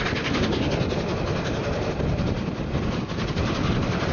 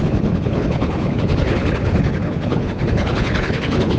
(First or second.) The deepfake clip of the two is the second